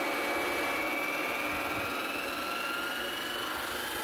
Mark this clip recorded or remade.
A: recorded